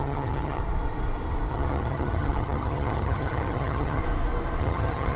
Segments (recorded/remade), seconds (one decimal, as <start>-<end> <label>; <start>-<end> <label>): 0.0-0.6 remade; 0.6-1.5 recorded; 1.5-4.0 remade; 4.0-4.6 recorded; 4.6-5.2 remade